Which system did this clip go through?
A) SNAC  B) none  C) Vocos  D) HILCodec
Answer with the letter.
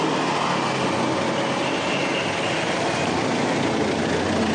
B